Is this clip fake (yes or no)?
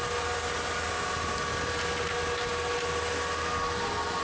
no